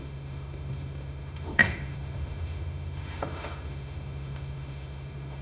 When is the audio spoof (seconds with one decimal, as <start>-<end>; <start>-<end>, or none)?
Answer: 0.0-5.4